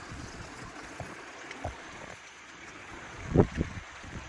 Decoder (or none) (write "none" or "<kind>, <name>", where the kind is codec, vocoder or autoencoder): vocoder, Vocos